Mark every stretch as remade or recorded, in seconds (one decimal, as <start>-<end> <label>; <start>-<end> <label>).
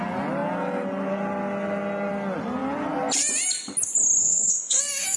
0.0-4.2 recorded; 4.2-5.2 remade